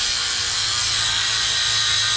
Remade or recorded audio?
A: recorded